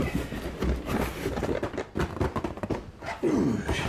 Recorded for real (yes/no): yes